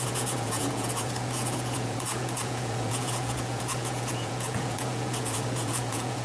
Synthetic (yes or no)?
yes